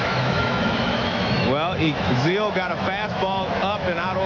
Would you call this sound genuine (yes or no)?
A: no